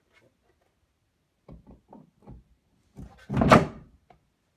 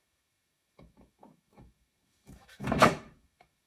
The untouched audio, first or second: first